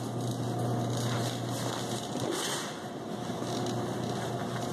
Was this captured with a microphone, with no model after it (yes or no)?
yes